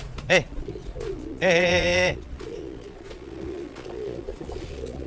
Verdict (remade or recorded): remade